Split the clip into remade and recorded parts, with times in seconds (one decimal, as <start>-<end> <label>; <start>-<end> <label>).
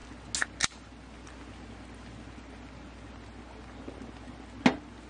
0.0-5.1 recorded